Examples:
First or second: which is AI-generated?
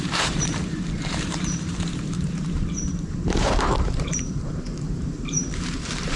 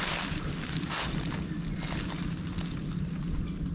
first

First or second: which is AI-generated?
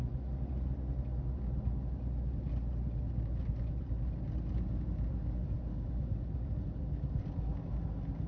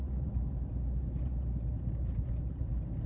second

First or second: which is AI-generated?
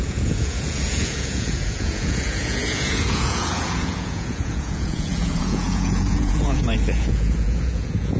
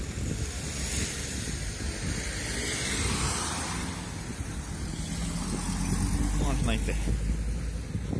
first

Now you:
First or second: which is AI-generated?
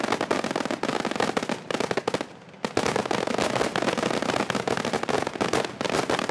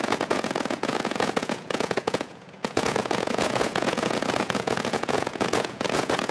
second